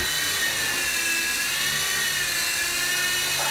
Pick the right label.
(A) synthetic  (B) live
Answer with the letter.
B